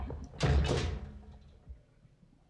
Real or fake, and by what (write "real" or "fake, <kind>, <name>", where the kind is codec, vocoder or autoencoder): real